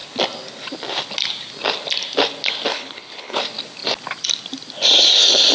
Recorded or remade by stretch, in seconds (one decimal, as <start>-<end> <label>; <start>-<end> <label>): 0.0-2.7 recorded; 2.7-3.4 remade; 3.4-5.5 recorded